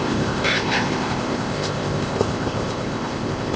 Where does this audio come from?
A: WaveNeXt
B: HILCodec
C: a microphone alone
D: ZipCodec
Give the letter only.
D